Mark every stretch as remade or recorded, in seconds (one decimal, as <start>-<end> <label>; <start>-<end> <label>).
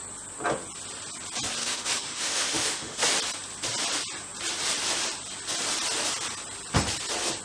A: 0.0-1.6 recorded; 1.6-3.0 remade; 3.0-7.4 recorded